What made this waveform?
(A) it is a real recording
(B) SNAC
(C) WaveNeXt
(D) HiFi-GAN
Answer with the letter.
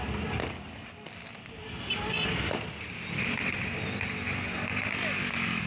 A